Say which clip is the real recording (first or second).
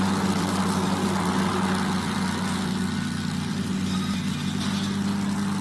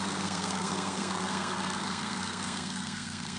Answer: first